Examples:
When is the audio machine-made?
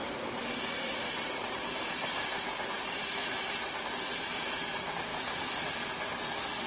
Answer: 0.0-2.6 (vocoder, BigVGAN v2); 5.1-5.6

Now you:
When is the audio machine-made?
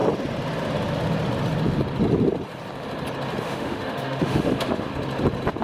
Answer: 3.4-4.9 (autoencoder, DAC-VAE)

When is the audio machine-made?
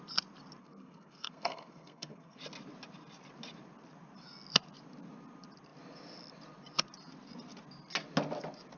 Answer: 0.6-2.4 (codec, SNAC)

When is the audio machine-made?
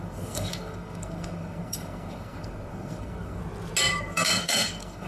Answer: 0.0-3.4 (codec, SNAC); 4.0-5.1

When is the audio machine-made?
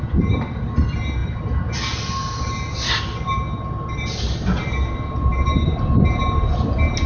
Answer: none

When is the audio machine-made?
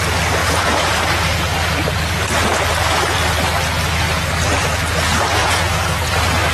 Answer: 0.4-0.9 (vocoder, Vocos); 5.4-6.1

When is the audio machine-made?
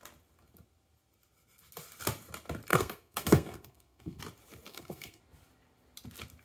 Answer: 2.7-4.2 (codec, SNAC); 4.7-5.2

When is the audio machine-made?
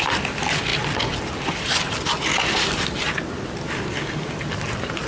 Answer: none